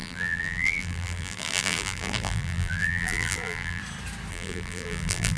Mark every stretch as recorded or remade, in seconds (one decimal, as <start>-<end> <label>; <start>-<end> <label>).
0.0-3.8 remade; 3.8-4.3 recorded; 4.3-5.4 remade